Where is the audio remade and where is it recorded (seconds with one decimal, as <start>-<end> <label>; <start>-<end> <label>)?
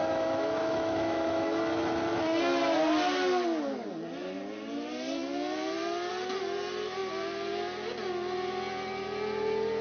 0.0-1.6 remade; 1.6-9.8 recorded